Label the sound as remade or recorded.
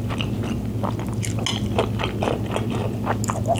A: recorded